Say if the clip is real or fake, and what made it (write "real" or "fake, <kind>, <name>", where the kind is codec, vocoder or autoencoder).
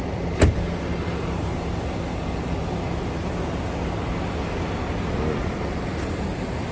real